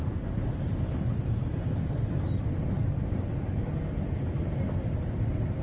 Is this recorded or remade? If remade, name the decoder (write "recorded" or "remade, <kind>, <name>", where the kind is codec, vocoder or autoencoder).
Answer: recorded